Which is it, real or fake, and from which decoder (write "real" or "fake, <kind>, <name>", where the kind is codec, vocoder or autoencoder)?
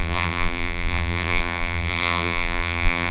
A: fake, vocoder, BigVGAN v2